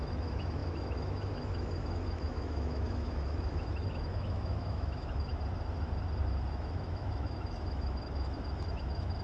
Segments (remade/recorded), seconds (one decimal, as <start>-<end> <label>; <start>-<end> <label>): 0.0-5.3 remade; 5.3-6.5 recorded; 6.5-9.2 remade